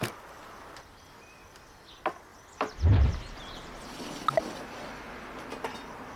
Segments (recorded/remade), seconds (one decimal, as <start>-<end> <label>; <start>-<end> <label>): 0.0-6.2 recorded